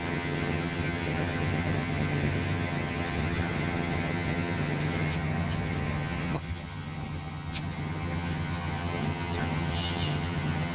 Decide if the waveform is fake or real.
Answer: fake